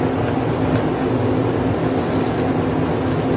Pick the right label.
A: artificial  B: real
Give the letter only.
B